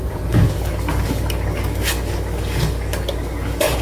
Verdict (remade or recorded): remade